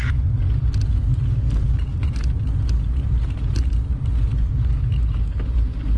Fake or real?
real